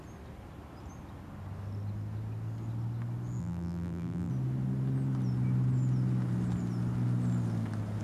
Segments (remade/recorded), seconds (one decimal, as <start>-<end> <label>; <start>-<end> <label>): 0.0-3.4 recorded; 3.4-4.3 remade; 4.3-8.0 recorded